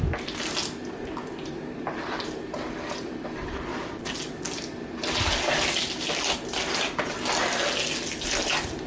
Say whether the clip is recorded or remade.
recorded